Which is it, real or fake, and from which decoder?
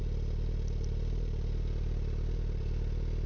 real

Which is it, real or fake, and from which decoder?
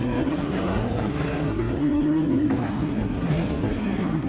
fake, codec, SNAC